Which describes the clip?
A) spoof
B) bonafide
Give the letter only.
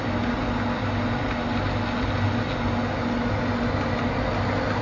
B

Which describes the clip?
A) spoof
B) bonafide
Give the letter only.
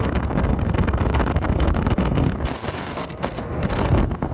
A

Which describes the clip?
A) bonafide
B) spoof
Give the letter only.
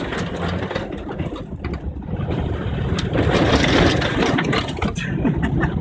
B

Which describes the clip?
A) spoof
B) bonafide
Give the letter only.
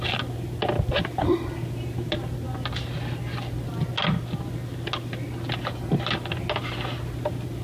B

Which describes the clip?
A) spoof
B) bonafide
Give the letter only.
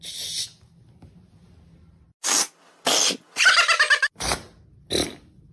B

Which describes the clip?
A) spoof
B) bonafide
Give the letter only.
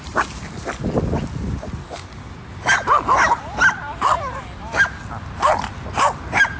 B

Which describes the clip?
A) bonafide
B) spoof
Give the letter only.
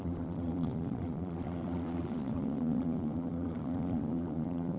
B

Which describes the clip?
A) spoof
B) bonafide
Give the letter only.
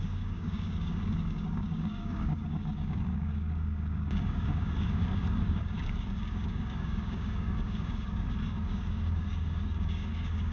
A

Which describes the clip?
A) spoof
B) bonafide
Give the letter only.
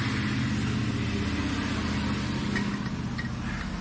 B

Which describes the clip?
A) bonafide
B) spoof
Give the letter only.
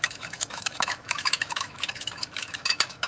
B